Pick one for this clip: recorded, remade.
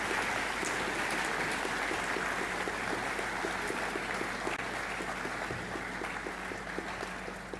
recorded